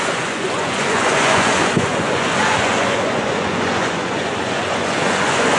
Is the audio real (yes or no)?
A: no